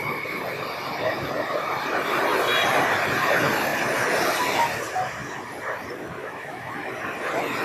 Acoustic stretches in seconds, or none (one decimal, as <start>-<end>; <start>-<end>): 0.0-6.2; 6.7-7.6